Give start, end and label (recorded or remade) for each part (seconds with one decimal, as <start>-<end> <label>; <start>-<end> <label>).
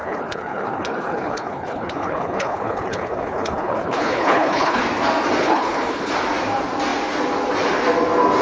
0.0-4.8 remade; 4.8-5.4 recorded; 5.4-6.1 remade; 6.1-8.4 recorded